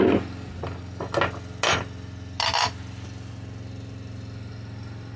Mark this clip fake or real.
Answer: real